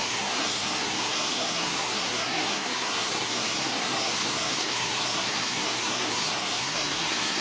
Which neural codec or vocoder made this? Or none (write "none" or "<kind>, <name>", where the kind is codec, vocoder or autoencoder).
codec, SNAC